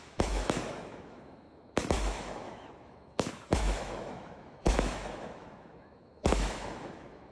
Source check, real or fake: fake